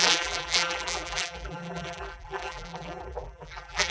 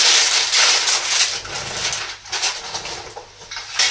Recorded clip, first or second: second